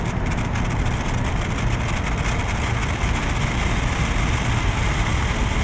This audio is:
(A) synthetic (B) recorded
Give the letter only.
B